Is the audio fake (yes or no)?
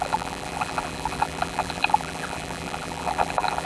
yes